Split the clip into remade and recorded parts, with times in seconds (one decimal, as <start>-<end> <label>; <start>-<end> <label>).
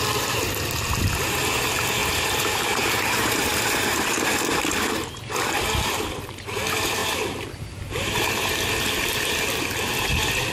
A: 0.0-2.0 recorded; 2.0-4.2 remade; 4.2-10.5 recorded